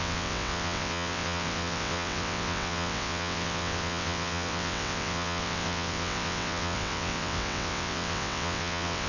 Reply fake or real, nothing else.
fake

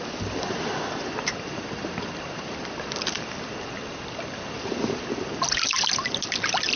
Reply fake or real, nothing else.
real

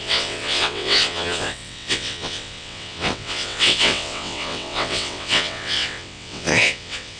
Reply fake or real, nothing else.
fake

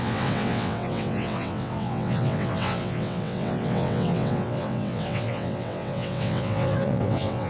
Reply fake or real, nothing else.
fake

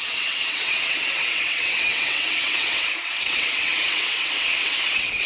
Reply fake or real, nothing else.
fake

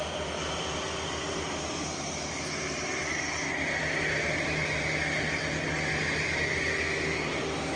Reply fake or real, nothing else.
real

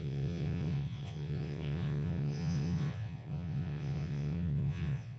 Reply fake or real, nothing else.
fake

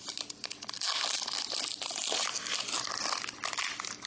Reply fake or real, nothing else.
real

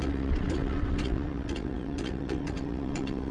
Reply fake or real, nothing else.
fake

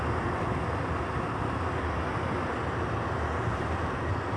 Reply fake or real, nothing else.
real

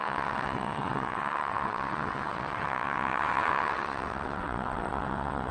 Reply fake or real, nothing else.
fake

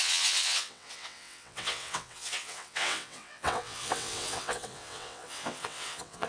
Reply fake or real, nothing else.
fake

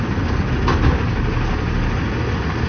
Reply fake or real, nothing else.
real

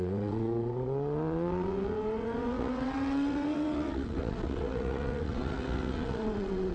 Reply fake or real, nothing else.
fake